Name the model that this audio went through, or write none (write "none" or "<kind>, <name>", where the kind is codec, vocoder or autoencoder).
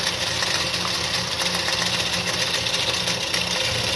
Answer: none